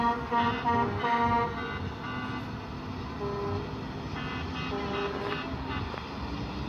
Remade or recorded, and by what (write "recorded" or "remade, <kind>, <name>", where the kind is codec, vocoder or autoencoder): recorded